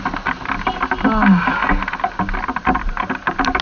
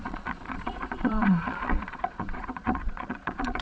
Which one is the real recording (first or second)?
first